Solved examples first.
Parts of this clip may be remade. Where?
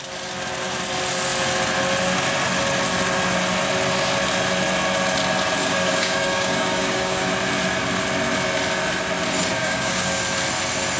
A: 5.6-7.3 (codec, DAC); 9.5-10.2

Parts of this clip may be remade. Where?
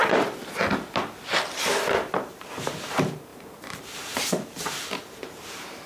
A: 1.3-5.9 (vocoder, BigVGAN v2)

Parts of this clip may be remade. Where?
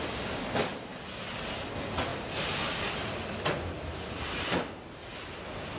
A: none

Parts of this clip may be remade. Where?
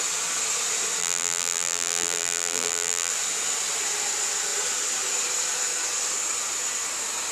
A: 1.0-3.1 (vocoder, BigVGAN v2)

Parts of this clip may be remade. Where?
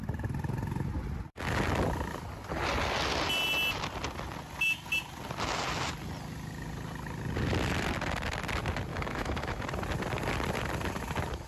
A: 8.9-9.6 (autoencoder, DAC-VAE)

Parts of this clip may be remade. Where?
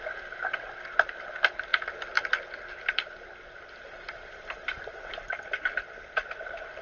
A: none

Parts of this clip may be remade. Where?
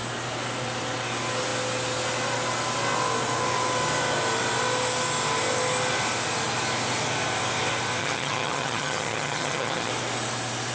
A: 8.0-9.9 (vocoder, HiFi-GAN)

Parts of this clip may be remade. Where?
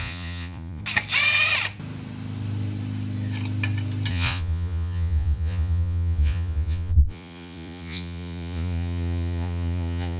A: 0.0-0.8 (vocoder, Vocos); 4.1-10.2